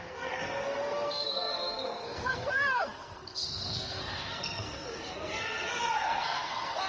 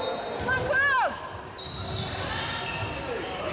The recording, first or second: second